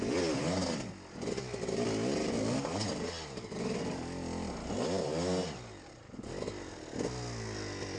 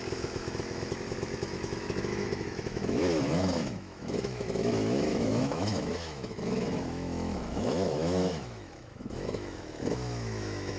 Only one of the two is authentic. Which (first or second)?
first